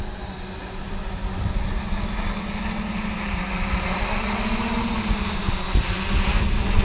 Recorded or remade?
recorded